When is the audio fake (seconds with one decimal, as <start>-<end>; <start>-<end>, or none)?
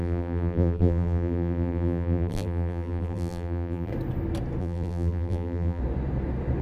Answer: 0.0-3.9; 4.6-5.8